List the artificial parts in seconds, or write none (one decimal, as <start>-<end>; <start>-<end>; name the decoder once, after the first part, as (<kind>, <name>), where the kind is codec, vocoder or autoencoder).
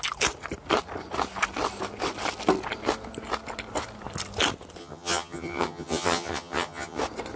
4.8-7.0 (vocoder, HiFi-GAN)